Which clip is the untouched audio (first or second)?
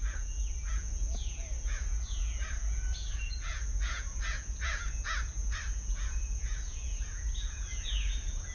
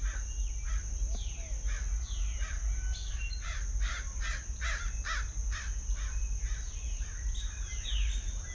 second